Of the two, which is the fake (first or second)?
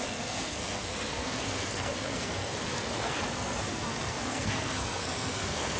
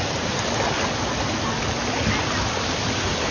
first